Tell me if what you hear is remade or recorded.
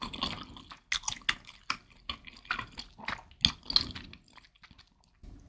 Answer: recorded